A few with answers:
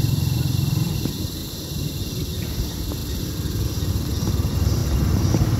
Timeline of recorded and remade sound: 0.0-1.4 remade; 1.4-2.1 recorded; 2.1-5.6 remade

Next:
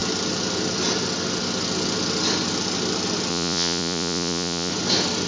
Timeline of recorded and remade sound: 0.0-3.3 recorded; 3.3-4.7 remade; 4.7-5.3 recorded

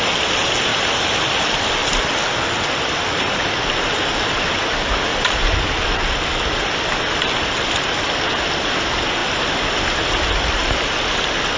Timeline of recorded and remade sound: 0.0-1.8 recorded; 1.8-2.3 remade; 2.3-5.1 recorded; 5.1-5.9 remade; 5.9-9.2 recorded; 9.2-10.2 remade; 10.2-11.6 recorded

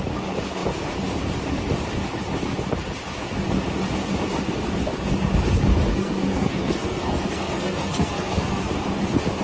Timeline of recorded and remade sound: 0.0-5.9 recorded; 5.9-8.7 remade; 8.7-9.4 recorded